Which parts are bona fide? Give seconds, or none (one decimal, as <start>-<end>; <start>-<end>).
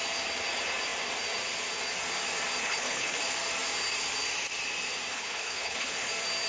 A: 0.0-2.6; 3.2-5.1; 6.1-6.5